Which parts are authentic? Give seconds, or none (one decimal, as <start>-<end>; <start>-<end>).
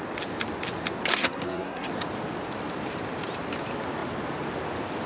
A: 0.0-1.1; 1.9-5.1